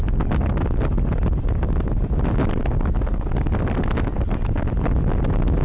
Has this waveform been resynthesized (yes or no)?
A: no